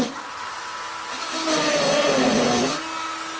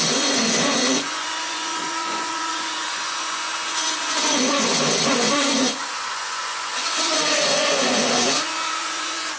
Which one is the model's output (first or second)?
second